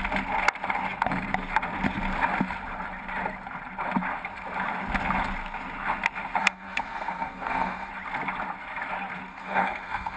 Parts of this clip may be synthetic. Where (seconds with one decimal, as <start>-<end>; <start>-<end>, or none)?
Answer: 6.4-7.9; 9.3-10.2